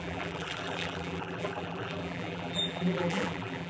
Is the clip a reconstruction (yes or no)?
yes